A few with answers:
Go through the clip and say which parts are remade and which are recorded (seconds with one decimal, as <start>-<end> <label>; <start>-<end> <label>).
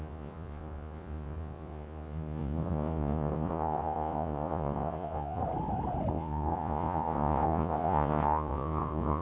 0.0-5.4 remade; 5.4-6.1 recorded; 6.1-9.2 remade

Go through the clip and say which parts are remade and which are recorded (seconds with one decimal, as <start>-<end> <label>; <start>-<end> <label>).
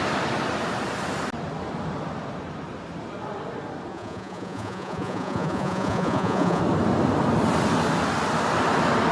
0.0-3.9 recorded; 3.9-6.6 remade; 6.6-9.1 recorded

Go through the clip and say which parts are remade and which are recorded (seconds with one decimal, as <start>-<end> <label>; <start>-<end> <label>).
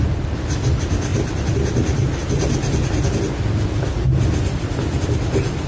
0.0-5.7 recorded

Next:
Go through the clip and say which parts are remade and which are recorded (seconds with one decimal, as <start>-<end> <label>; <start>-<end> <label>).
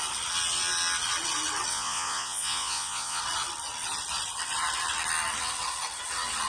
0.0-1.7 recorded; 1.7-3.2 remade; 3.2-6.5 recorded